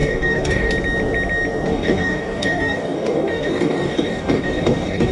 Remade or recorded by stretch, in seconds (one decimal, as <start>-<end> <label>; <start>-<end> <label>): 0.0-0.7 remade; 0.7-1.7 recorded; 1.7-5.1 remade